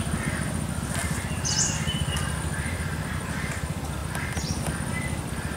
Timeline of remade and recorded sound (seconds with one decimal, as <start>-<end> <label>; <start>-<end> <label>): 0.0-1.0 recorded; 1.0-1.8 remade; 1.8-5.6 recorded